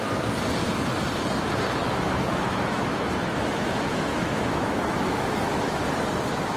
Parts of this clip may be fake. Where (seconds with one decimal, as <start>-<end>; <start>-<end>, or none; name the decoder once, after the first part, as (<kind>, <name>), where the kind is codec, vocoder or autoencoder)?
1.8-5.8 (autoencoder, DAC-VAE)